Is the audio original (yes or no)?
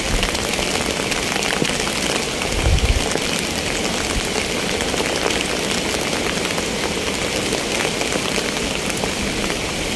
yes